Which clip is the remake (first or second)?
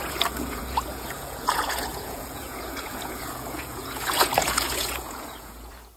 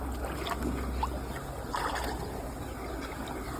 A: first